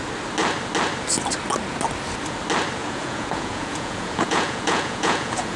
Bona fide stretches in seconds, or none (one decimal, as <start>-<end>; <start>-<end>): 0.0-2.8